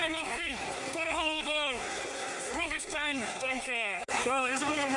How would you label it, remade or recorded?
remade